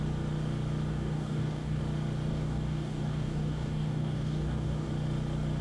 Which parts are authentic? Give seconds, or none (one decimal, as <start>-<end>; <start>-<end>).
0.0-0.9; 1.8-2.3; 4.9-5.6

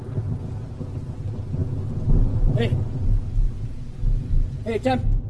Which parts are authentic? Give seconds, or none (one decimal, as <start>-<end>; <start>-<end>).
0.0-5.3

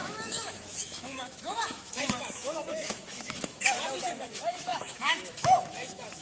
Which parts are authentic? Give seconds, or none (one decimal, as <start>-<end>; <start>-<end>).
none

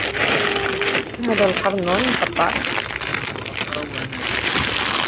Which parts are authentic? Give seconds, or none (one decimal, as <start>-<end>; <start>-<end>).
0.0-5.1